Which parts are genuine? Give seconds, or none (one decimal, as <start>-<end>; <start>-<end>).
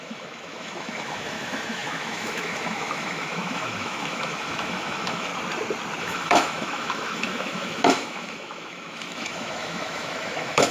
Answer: 5.3-6.0